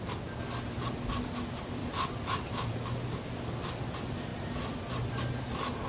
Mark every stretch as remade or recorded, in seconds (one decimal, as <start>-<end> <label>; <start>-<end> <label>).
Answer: 0.0-5.9 recorded